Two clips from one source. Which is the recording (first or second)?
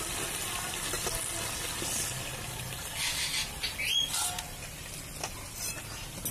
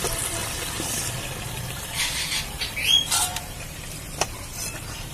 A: first